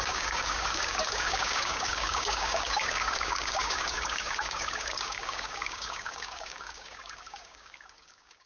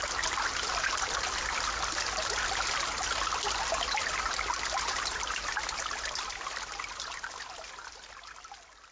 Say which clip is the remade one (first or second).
first